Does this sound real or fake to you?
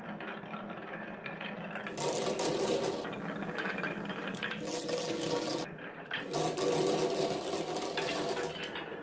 real